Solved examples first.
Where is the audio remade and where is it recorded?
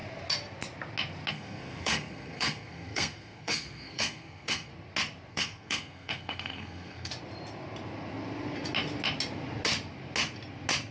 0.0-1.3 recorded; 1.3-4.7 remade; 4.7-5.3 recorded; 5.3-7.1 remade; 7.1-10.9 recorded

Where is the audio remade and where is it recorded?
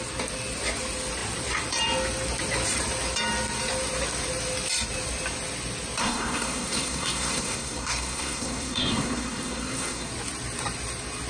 0.0-6.0 recorded; 6.0-10.1 remade; 10.1-11.3 recorded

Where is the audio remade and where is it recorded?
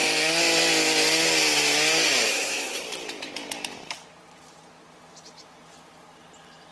0.0-2.3 recorded; 2.3-2.8 remade; 2.8-6.7 recorded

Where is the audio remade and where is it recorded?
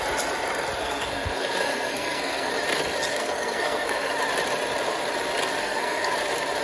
0.0-0.8 recorded; 0.8-2.5 remade; 2.5-3.1 recorded; 3.1-4.1 remade; 4.1-5.6 recorded; 5.6-6.1 remade; 6.1-6.6 recorded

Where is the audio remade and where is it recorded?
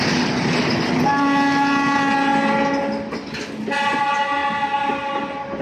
0.0-5.6 recorded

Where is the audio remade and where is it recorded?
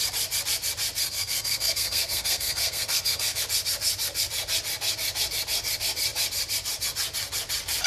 0.0-1.0 recorded; 1.0-3.4 remade; 3.4-7.9 recorded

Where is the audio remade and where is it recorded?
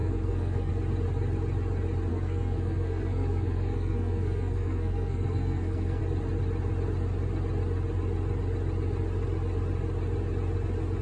0.0-0.7 remade; 0.7-2.1 recorded; 2.1-6.0 remade; 6.0-11.0 recorded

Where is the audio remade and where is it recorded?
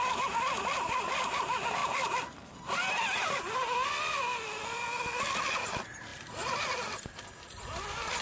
0.0-8.2 recorded